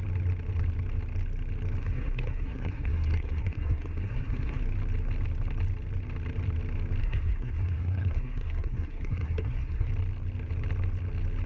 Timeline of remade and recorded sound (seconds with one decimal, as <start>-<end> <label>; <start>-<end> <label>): 0.0-1.8 recorded; 1.8-4.6 remade; 4.6-7.0 recorded; 7.0-9.9 remade; 9.9-11.5 recorded